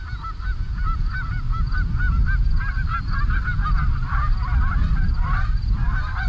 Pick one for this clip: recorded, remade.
recorded